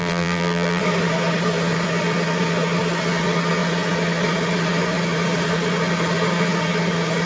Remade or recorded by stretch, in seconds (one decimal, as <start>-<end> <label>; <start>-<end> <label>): 0.0-0.8 remade; 0.8-7.3 recorded